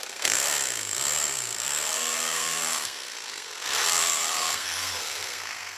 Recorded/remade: remade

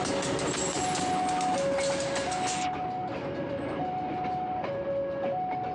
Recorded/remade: recorded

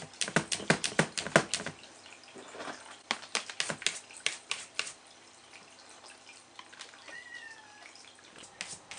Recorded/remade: recorded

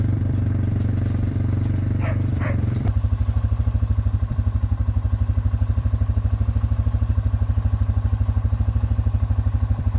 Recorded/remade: remade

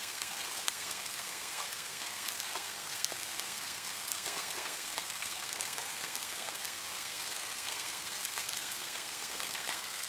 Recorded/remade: remade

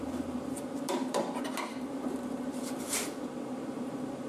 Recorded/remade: remade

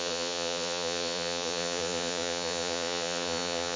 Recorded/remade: remade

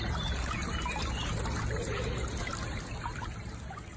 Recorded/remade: recorded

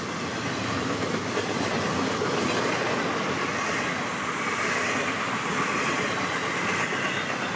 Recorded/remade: recorded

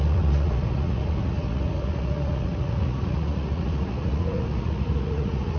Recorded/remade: remade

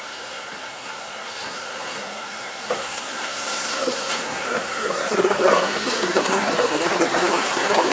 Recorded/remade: remade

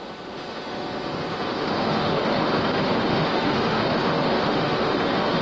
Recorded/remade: remade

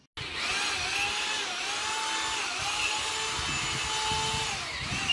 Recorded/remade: recorded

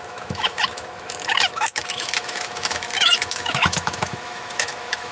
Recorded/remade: remade